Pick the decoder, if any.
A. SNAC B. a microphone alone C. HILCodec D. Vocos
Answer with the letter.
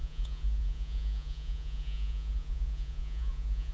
D